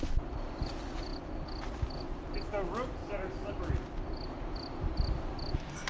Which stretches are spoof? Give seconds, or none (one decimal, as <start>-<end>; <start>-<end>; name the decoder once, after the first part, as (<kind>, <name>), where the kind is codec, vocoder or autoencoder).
none